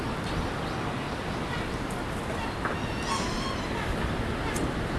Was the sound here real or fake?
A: real